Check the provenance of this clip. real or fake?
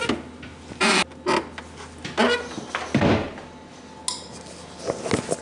real